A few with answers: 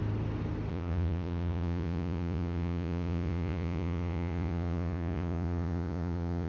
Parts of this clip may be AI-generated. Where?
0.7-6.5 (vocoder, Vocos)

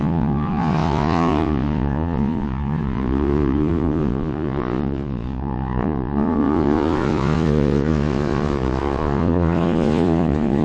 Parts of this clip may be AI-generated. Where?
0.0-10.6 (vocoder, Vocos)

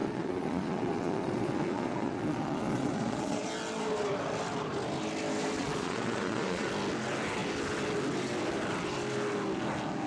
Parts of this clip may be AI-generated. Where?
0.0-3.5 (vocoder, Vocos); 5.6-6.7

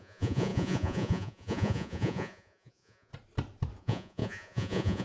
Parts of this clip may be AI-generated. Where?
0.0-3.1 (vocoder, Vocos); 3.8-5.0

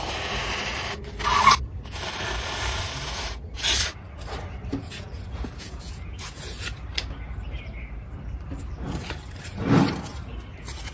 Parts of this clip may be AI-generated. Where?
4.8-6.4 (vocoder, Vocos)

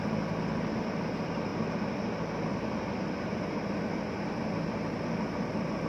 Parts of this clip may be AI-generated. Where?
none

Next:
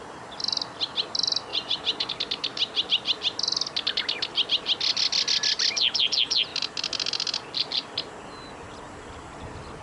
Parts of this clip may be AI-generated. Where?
1.5-2.1 (vocoder, Vocos)